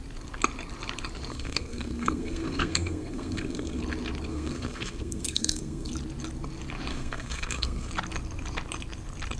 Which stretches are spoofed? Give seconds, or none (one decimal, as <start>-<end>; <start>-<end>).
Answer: 1.3-3.8; 4.3-5.9; 6.9-7.9